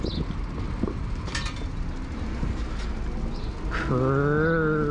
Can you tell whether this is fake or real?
real